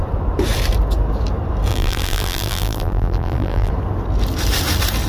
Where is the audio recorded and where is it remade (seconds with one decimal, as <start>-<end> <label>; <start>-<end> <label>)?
0.0-1.7 recorded; 1.7-3.7 remade; 3.7-5.1 recorded